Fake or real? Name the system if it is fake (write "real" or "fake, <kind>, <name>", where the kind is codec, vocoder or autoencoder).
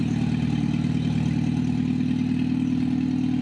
real